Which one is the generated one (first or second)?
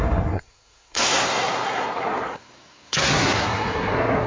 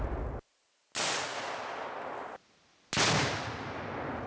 first